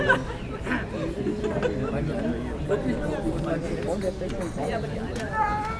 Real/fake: real